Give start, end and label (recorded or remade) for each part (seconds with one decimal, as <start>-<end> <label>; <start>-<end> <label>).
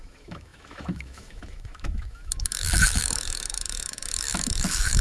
0.0-5.0 remade